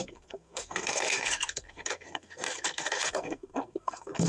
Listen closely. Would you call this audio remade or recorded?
remade